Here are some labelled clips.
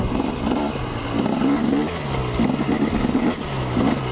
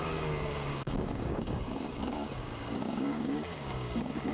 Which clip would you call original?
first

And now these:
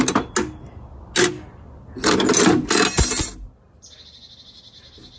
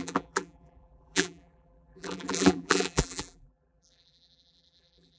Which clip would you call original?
first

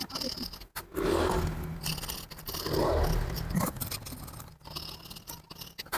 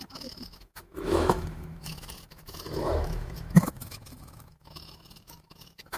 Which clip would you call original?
first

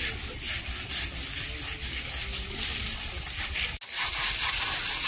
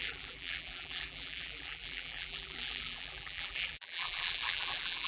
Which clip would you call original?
first